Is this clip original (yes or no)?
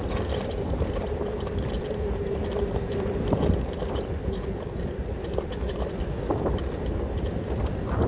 no